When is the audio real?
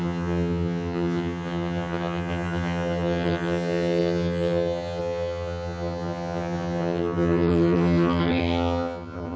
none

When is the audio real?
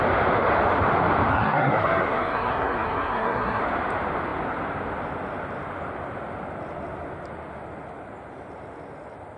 0.0-1.3; 3.6-9.4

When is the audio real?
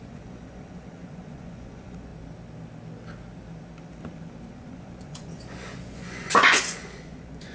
2.1-4.5